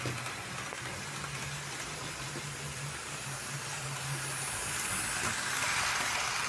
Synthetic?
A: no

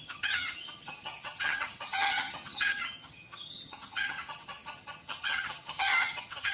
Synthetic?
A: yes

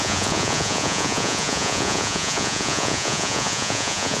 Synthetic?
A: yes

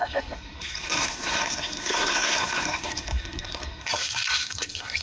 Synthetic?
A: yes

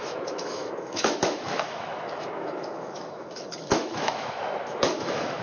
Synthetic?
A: yes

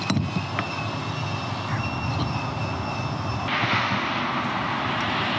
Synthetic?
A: no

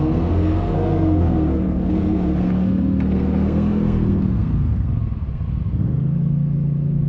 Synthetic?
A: yes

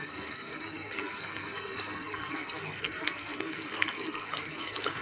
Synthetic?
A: yes